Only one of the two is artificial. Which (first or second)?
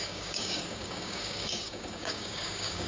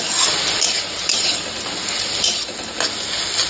first